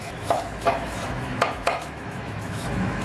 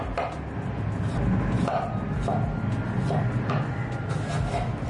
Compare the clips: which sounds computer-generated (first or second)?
first